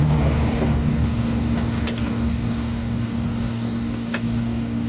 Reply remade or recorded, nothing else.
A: remade